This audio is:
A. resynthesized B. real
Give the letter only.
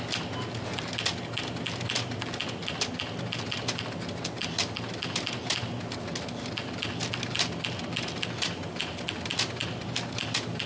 B